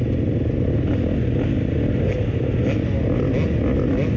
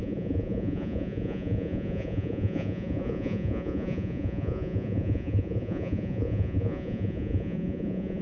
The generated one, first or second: second